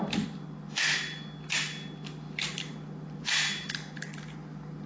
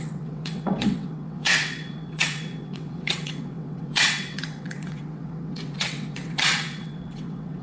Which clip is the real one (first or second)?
first